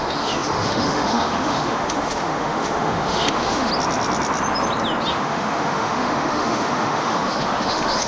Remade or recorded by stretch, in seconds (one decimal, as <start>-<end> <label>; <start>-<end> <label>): 0.0-3.7 remade; 3.7-5.1 recorded; 5.1-8.1 remade